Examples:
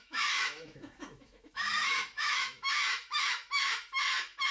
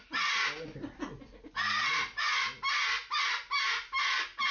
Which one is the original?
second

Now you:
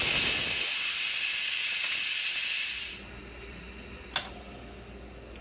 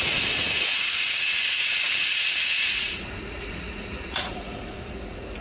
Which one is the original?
first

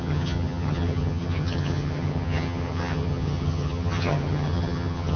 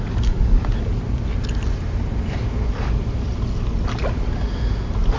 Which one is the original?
second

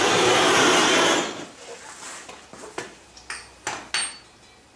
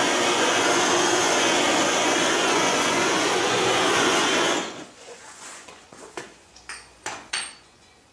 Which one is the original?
first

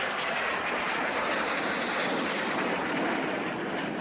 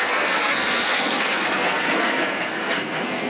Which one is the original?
first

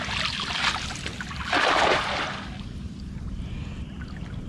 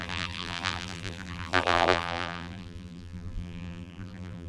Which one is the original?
first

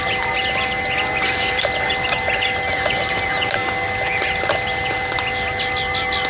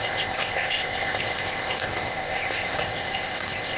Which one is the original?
first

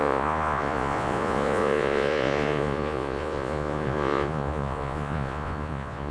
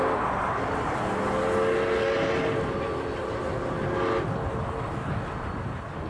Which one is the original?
second